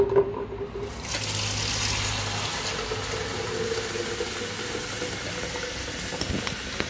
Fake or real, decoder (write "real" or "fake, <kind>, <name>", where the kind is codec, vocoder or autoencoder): real